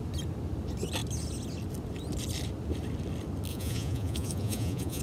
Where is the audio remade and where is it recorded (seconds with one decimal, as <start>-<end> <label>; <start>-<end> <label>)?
0.0-3.5 recorded; 3.5-5.0 remade